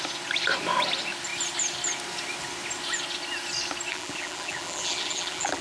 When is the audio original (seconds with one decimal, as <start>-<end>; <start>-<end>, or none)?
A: 0.0-3.9